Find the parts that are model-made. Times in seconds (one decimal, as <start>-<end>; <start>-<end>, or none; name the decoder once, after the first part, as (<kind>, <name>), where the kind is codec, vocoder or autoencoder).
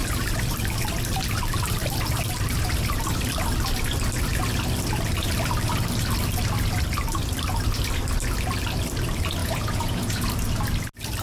9.4-10.3 (vocoder, Vocos)